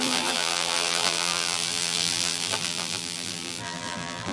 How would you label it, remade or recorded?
remade